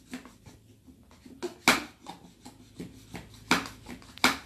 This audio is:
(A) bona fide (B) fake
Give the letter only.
A